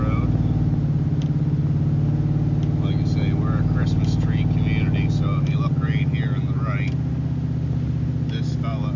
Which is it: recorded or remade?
recorded